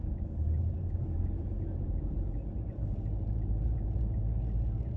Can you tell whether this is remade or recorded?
remade